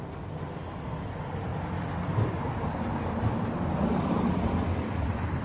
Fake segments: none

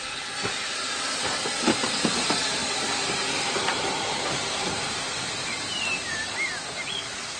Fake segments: none